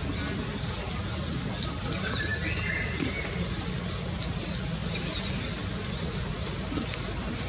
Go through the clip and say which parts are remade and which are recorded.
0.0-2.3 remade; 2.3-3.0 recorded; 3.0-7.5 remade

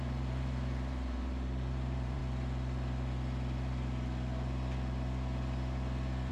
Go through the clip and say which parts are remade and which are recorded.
0.0-2.2 remade; 2.2-6.3 recorded

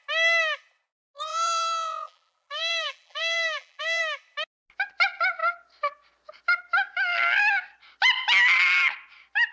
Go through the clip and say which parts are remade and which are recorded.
0.0-1.3 recorded; 1.3-4.0 remade; 4.0-9.5 recorded

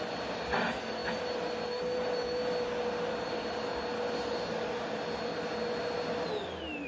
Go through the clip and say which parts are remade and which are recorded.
0.0-6.9 recorded

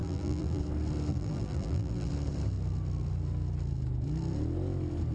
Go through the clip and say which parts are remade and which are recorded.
0.0-0.6 remade; 0.6-1.1 recorded; 1.1-2.1 remade; 2.1-5.1 recorded

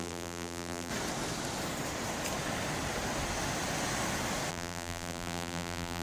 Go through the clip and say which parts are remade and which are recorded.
0.0-0.9 remade; 0.9-4.5 recorded; 4.5-6.0 remade